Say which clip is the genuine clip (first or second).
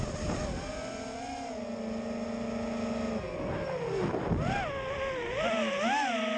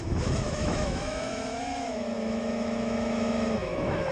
first